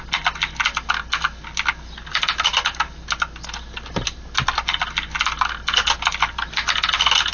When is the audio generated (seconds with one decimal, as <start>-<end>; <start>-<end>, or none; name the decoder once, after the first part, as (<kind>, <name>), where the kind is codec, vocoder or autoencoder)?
none

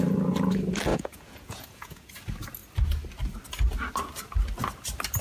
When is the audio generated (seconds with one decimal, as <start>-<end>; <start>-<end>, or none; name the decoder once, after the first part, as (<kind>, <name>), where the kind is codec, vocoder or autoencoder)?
0.9-2.1 (vocoder, Vocos)

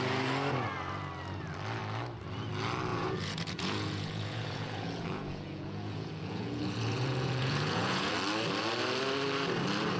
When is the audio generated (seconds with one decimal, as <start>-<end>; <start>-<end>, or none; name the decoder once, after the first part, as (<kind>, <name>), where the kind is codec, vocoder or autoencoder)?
2.9-8.1 (vocoder, Vocos)

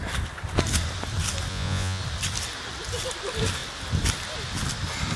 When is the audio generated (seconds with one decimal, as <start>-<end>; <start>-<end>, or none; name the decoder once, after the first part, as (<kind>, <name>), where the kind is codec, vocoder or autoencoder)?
1.5-2.0 (vocoder, Vocos)

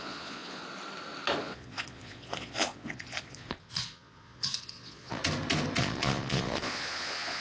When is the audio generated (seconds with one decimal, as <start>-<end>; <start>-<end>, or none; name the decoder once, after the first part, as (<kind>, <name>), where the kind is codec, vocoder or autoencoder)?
0.0-0.6 (vocoder, Vocos); 1.4-5.2; 5.8-7.4

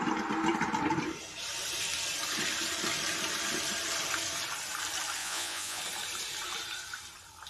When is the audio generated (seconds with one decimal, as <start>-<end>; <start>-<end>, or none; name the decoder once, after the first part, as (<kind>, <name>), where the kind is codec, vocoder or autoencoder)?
5.2-5.8 (vocoder, Vocos)

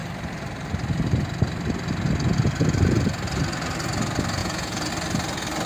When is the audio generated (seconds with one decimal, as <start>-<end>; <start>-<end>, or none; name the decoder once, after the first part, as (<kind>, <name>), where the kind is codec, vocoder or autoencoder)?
4.4-4.9 (vocoder, Vocos)